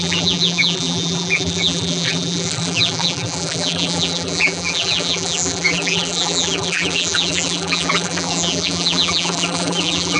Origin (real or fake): fake